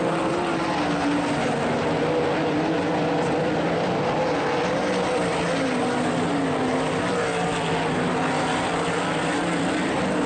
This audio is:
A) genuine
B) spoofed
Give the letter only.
A